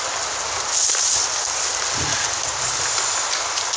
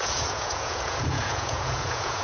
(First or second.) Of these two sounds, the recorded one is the first